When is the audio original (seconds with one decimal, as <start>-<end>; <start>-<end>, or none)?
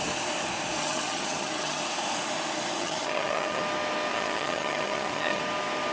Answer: 0.0-0.8; 1.8-2.8; 3.6-4.1; 5.4-5.9